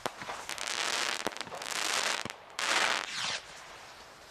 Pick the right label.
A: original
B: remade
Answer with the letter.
A